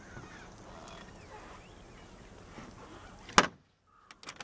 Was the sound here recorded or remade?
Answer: recorded